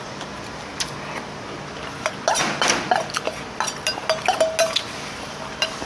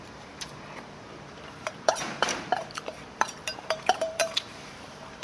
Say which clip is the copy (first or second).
second